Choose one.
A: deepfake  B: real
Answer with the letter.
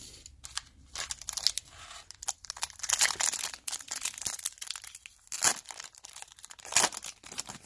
B